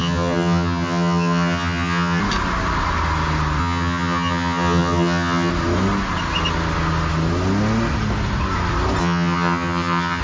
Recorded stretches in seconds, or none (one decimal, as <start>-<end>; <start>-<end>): 2.2-3.6; 5.5-9.0